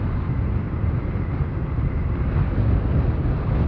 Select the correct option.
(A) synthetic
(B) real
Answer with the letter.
B